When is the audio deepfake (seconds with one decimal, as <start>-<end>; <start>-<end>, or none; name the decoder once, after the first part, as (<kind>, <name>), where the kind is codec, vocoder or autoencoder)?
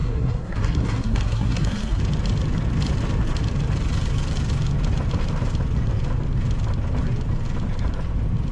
0.0-2.0 (codec, SNAC)